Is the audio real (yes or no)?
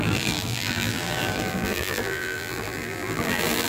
no